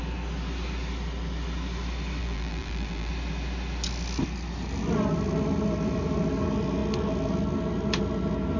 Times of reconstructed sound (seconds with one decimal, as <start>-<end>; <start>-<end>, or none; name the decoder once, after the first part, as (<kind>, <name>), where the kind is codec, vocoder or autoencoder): 2.2-3.1 (vocoder, BigVGAN v2)